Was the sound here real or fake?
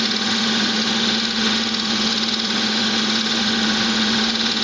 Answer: fake